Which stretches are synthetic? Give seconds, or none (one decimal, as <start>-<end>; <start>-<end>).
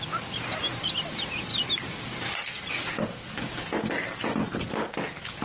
none